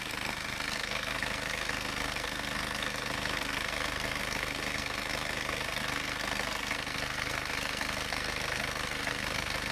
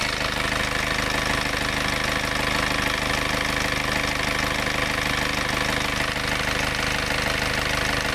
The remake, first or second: first